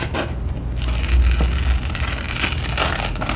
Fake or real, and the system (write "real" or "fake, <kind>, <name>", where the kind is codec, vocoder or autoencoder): real